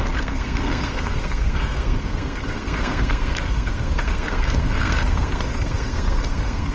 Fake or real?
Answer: fake